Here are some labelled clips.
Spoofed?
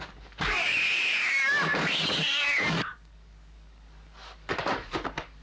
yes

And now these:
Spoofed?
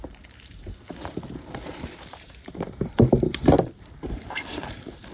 yes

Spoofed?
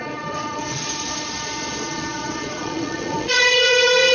yes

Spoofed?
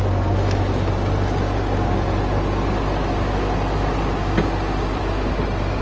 no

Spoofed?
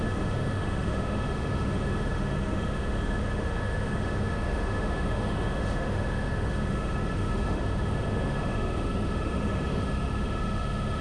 yes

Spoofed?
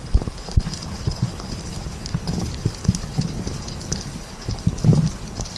yes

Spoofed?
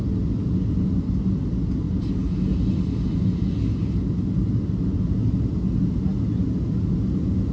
no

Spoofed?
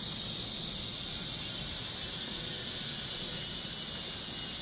no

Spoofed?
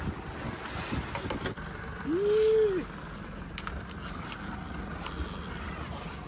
no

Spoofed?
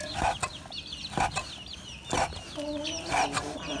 no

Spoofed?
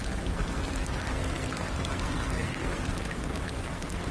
yes